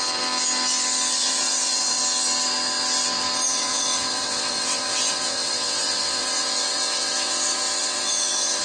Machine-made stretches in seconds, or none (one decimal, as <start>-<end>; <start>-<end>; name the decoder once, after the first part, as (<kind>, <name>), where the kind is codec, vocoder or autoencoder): 1.2-2.0 (vocoder, WaveNeXt); 3.5-8.6